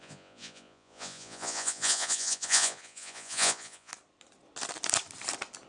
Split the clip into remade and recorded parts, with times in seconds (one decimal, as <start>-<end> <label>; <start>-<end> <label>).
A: 0.0-3.9 remade; 3.9-5.7 recorded